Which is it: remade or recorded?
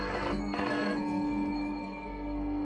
remade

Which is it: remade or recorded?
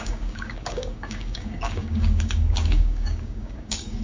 remade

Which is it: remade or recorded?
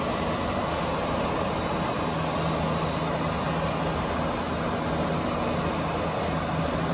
recorded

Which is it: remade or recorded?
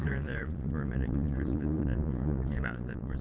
remade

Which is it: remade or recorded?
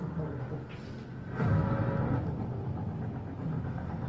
recorded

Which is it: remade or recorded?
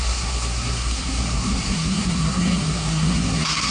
remade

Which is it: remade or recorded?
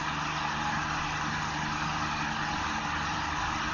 recorded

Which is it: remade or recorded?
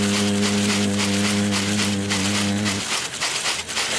recorded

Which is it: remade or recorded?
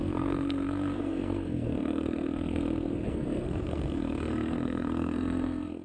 remade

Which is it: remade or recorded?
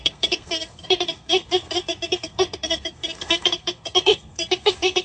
remade